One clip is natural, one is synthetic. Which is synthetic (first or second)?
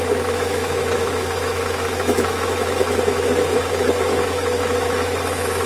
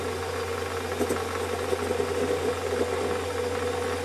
first